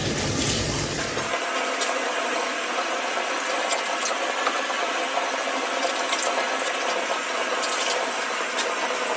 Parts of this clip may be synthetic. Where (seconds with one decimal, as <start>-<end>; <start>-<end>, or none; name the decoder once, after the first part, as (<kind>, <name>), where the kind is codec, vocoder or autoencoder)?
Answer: 0.0-1.1 (vocoder, BigVGAN v2); 2.1-3.3